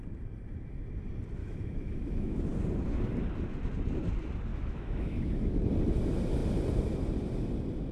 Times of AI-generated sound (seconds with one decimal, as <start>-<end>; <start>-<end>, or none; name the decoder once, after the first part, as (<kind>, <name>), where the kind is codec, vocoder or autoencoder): 1.4-2.5 (autoencoder, DAC-VAE); 4.5-5.6